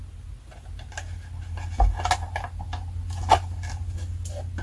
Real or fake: real